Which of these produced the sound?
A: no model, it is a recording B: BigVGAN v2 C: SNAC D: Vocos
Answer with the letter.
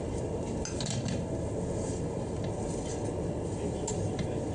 A